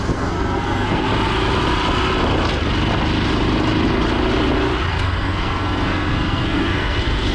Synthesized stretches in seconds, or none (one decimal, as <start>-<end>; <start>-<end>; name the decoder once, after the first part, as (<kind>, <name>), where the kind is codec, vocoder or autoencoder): 0.0-1.1 (codec, SNAC); 4.9-7.3